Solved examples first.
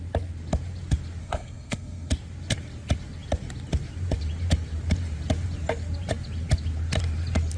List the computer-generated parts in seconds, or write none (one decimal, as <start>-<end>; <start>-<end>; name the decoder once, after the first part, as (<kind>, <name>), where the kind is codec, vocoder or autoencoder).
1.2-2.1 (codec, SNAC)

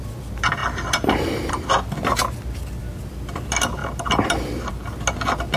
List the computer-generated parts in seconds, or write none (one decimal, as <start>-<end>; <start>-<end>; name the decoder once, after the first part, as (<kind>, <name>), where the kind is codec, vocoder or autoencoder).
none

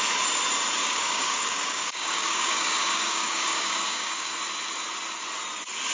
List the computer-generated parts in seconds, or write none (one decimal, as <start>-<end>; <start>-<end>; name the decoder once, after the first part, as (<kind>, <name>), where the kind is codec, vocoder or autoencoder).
0.8-4.3 (codec, DAC)

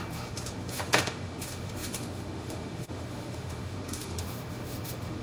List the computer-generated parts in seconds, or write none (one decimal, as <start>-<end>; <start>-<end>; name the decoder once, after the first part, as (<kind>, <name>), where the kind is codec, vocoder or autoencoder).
0.0-5.2 (autoencoder, DAC-VAE)